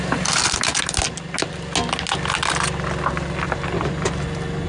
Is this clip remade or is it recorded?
recorded